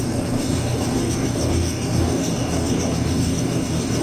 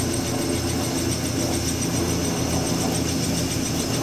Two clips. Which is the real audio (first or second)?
second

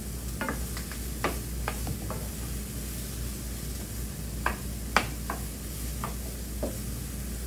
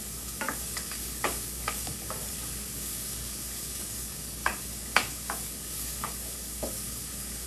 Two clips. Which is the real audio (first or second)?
first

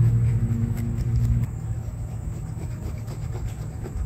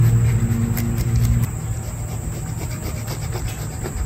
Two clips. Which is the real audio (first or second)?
second